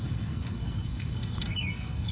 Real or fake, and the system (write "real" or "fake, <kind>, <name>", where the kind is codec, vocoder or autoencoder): fake, codec, SNAC